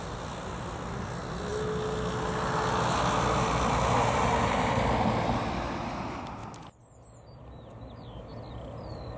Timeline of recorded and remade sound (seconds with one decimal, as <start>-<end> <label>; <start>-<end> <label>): 0.0-9.2 recorded